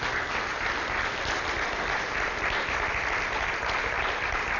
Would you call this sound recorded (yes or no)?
yes